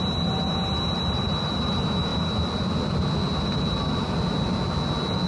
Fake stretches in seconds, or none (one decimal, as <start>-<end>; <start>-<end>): none